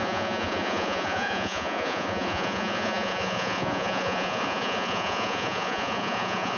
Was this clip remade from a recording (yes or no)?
yes